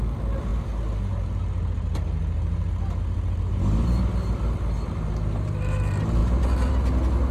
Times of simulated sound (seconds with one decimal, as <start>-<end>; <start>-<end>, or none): none